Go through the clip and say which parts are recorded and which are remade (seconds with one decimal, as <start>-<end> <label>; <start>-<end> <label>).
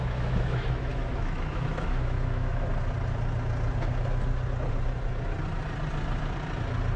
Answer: 0.0-2.7 remade; 2.7-7.0 recorded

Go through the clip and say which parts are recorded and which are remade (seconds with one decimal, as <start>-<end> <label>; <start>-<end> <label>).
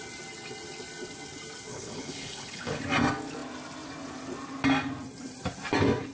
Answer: 0.0-1.7 recorded; 1.7-2.8 remade; 2.8-6.1 recorded